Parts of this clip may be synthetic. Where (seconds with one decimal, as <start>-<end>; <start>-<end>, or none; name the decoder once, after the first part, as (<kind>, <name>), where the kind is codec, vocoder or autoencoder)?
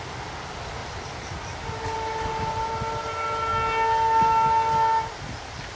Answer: 0.8-2.3 (vocoder, BigVGAN v2)